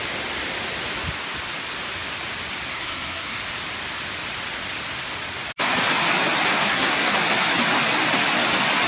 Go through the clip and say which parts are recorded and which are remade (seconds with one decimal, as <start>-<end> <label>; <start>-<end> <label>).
0.0-2.7 recorded; 2.7-3.4 remade; 3.4-6.5 recorded; 6.5-7.1 remade; 7.1-8.9 recorded